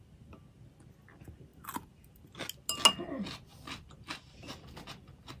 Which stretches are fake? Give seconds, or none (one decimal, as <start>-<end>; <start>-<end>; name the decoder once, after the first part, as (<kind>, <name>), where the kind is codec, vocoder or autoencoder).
1.5-2.2 (vocoder, BigVGAN v2)